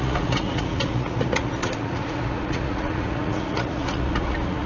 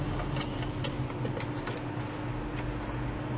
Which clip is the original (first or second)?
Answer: second